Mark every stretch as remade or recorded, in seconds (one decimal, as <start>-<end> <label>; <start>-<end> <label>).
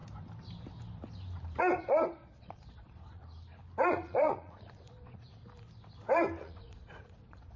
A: 0.0-1.6 recorded; 1.6-3.2 remade; 3.2-3.9 recorded; 3.9-5.3 remade; 5.3-6.4 recorded; 6.4-7.6 remade